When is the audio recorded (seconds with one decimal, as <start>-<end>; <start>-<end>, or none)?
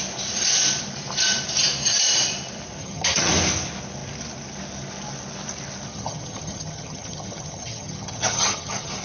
0.0-2.8; 3.3-5.9